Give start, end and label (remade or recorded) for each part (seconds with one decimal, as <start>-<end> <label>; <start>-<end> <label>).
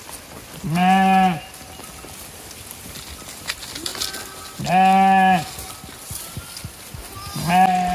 0.0-7.9 recorded